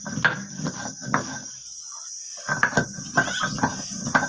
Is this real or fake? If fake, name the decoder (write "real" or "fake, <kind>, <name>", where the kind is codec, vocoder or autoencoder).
real